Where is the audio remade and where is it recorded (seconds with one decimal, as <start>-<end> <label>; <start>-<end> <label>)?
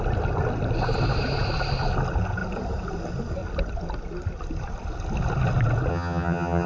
0.0-5.9 recorded; 5.9-6.7 remade